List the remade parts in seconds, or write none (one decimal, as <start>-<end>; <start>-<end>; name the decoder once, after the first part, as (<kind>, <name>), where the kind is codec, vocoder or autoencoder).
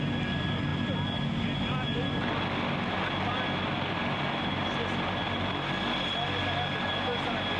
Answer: none